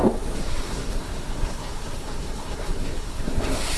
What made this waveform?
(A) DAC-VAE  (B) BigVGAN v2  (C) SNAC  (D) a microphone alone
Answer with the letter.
C